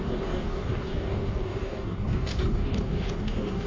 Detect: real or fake fake